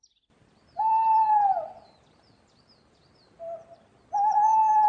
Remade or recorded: remade